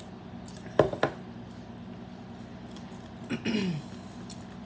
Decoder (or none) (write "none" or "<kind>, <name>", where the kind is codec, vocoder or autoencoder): none